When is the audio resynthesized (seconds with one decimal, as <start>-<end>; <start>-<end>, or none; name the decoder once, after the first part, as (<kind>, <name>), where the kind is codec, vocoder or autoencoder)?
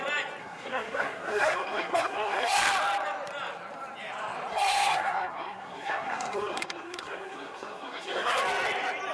0.4-2.6 (codec, SNAC); 4.5-8.4